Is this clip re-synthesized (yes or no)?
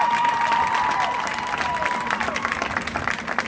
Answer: yes